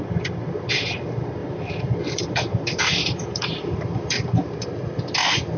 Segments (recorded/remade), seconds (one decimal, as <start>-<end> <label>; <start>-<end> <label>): 0.0-1.4 recorded; 1.4-4.8 remade; 4.8-5.6 recorded